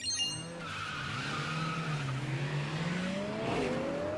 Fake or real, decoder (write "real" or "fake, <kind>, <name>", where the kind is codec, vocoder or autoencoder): real